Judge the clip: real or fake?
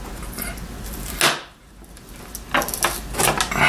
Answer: real